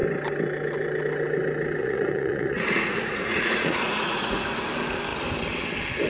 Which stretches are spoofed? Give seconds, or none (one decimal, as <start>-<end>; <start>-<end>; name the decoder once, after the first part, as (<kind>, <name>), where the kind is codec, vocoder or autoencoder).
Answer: 1.8-4.6 (vocoder, Vocos)